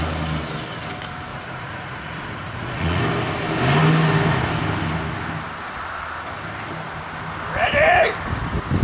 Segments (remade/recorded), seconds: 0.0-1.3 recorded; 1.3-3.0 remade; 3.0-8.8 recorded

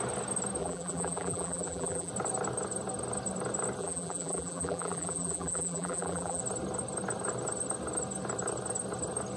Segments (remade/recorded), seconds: 0.0-0.6 recorded; 0.6-2.1 remade; 2.1-3.8 recorded; 3.8-6.4 remade; 6.4-9.4 recorded

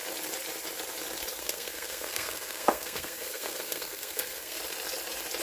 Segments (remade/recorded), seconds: 0.0-1.4 recorded; 1.4-4.6 remade; 4.6-5.4 recorded

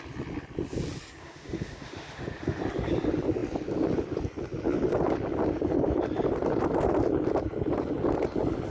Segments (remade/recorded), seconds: 0.0-1.2 recorded; 1.2-2.6 remade; 2.6-8.7 recorded

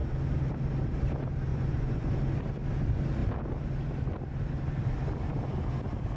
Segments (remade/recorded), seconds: 0.0-1.5 recorded; 1.5-2.1 remade; 2.1-6.2 recorded